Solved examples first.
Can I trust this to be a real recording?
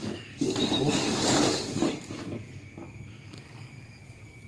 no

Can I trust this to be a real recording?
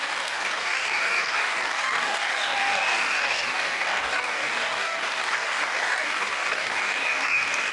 no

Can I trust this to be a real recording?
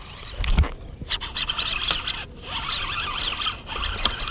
yes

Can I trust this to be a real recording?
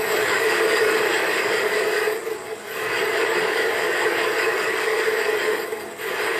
no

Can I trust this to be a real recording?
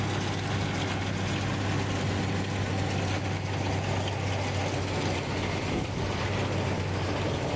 yes